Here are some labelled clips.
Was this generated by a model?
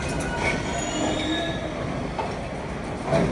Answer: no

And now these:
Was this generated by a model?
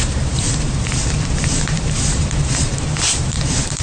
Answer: yes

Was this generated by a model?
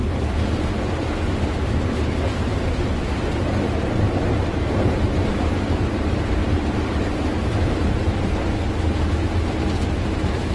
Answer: yes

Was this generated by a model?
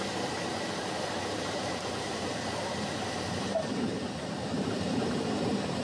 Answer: yes